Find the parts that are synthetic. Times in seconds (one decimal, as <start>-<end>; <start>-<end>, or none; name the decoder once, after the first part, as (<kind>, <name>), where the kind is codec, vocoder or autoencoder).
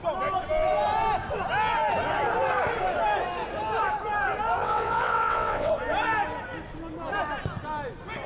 4.6-5.7 (vocoder, WaveNeXt)